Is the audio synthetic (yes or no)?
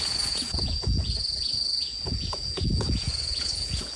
yes